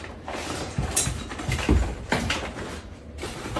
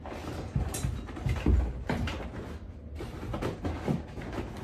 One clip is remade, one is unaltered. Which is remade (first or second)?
first